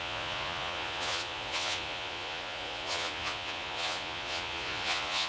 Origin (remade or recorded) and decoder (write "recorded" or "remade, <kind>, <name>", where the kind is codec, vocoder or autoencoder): remade, vocoder, Vocos